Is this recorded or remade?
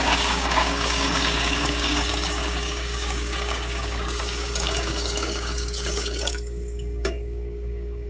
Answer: remade